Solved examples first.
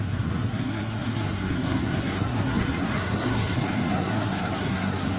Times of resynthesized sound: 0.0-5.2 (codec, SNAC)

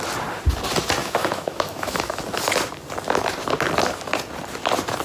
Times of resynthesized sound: 1.0-2.2 (autoencoder, DAC-VAE)